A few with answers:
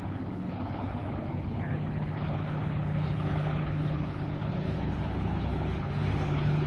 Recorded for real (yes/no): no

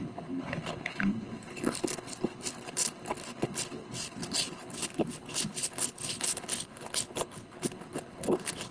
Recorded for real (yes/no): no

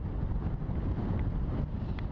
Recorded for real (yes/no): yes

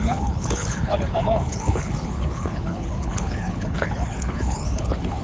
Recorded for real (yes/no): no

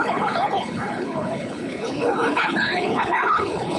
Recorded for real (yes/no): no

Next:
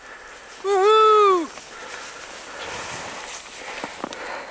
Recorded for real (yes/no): yes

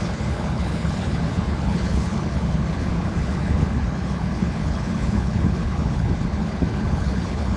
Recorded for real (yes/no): no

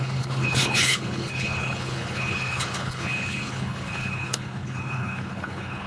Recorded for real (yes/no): no